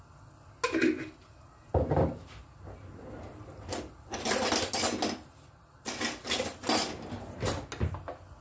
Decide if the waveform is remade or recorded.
recorded